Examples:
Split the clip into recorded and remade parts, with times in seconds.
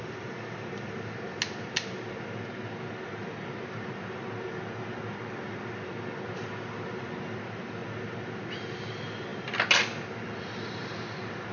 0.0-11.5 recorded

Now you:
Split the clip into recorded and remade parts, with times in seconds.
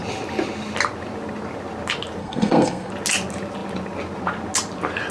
0.0-2.2 recorded; 2.2-2.9 remade; 2.9-5.1 recorded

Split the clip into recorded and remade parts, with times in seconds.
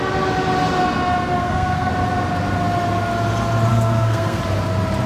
0.0-1.4 recorded; 1.4-1.9 remade; 1.9-3.7 recorded; 3.7-4.4 remade; 4.4-5.1 recorded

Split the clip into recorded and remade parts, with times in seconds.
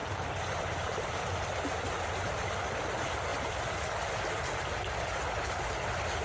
0.0-6.2 recorded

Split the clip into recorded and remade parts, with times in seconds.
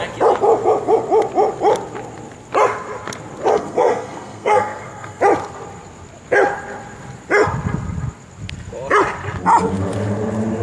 0.0-3.5 recorded; 3.5-5.2 remade; 5.2-10.6 recorded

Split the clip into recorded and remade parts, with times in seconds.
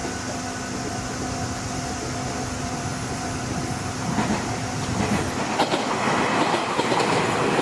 0.0-7.6 recorded